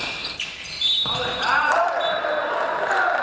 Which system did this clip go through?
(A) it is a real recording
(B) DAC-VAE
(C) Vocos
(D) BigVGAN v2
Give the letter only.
D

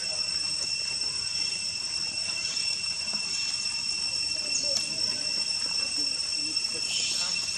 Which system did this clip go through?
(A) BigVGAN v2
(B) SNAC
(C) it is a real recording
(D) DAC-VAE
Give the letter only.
C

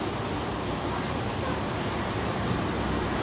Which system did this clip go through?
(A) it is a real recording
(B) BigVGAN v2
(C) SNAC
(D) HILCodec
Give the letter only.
B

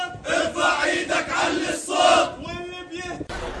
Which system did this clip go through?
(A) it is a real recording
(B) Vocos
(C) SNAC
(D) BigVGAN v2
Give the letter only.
A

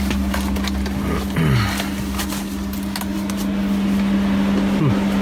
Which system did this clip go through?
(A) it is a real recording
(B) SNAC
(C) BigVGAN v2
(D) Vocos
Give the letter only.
A